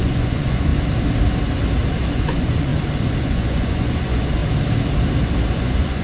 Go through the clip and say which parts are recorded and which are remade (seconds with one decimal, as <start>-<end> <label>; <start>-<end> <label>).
0.0-0.7 remade; 0.7-2.1 recorded; 2.1-2.7 remade; 2.7-3.2 recorded; 3.2-4.4 remade; 4.4-5.5 recorded; 5.5-6.0 remade